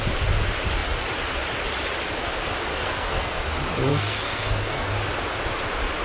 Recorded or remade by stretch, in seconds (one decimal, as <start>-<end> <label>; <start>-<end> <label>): 0.0-2.7 recorded; 2.7-3.4 remade; 3.4-3.9 recorded; 3.9-4.9 remade; 4.9-6.0 recorded